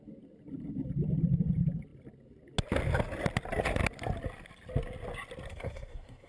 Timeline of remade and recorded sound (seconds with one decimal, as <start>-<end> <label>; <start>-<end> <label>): 0.0-5.5 recorded; 5.5-6.3 remade